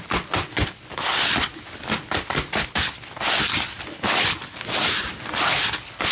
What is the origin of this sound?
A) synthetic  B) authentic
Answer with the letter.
B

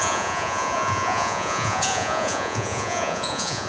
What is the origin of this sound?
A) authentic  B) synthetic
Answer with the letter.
B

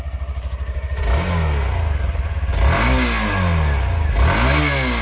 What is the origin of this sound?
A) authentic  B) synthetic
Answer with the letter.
A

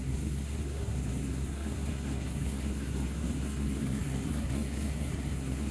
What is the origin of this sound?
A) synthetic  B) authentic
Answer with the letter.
A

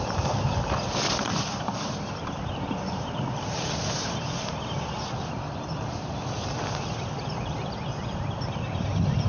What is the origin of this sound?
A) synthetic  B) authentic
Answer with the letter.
A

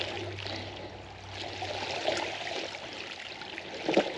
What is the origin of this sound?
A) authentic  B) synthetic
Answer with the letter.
A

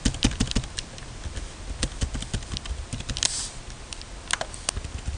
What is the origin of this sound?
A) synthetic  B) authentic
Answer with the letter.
B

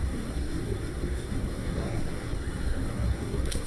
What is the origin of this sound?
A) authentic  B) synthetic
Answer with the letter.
B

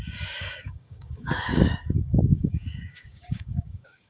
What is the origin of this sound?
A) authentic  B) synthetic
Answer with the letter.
B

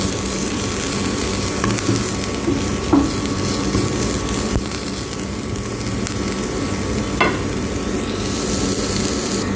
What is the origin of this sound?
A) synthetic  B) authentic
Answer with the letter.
B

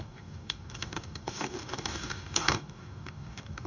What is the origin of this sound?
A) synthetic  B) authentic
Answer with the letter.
A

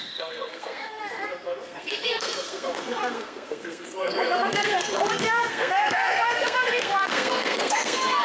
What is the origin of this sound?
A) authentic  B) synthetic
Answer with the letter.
B